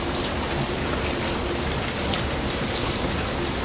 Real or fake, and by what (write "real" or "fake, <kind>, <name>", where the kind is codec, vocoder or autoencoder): real